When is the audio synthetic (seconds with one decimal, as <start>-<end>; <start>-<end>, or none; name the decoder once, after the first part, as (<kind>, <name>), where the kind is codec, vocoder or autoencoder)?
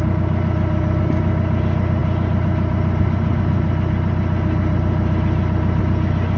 none